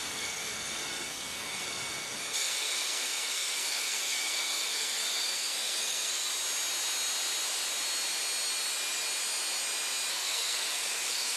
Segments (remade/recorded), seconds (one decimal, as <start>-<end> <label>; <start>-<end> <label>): 0.0-6.3 remade; 6.3-10.1 recorded; 10.1-11.4 remade